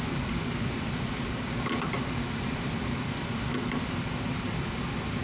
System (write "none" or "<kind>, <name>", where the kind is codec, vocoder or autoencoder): none